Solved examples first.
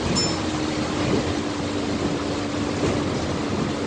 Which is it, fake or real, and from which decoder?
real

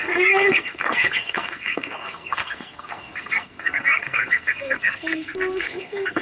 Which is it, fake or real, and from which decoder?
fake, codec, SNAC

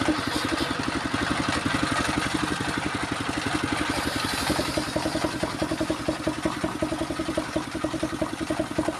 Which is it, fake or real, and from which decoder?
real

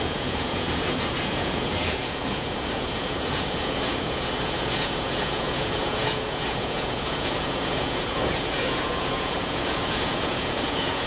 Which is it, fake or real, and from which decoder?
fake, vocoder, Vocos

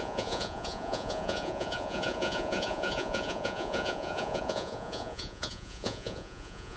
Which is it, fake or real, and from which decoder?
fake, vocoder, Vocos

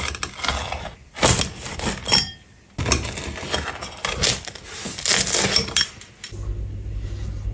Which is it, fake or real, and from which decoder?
real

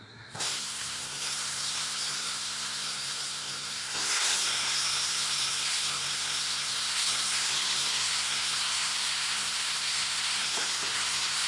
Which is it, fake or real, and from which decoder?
fake, codec, SNAC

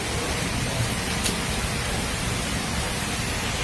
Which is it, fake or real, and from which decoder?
real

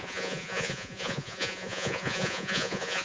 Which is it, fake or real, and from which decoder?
fake, vocoder, Vocos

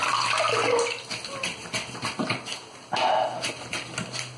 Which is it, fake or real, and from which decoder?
real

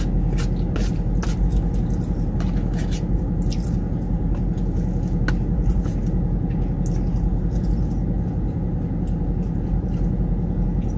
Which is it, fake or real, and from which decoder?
real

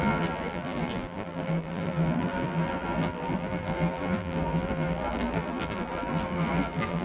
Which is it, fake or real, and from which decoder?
fake, vocoder, BigVGAN v2